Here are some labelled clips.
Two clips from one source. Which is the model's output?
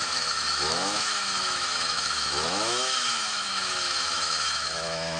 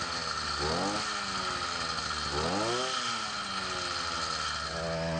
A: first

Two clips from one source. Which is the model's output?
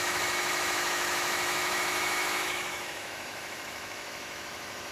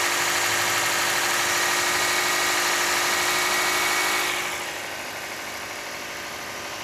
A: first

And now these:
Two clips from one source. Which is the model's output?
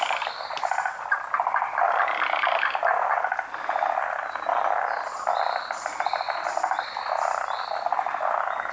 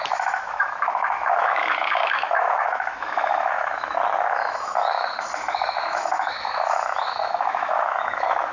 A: second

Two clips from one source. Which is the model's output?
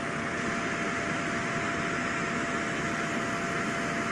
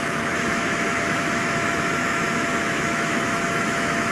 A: second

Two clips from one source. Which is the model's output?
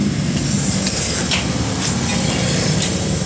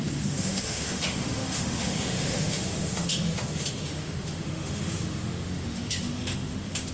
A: second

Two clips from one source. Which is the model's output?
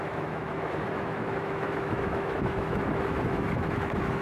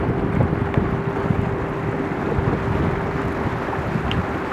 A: first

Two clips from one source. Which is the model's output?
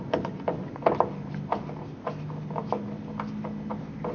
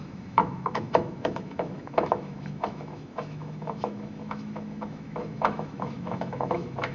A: second